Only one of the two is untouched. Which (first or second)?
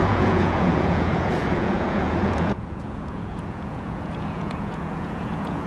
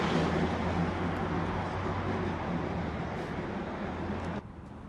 second